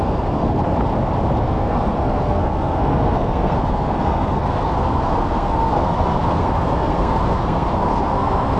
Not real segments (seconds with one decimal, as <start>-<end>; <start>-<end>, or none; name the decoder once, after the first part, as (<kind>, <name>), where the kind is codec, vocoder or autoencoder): 0.0-0.6 (codec, SNAC); 1.4-8.6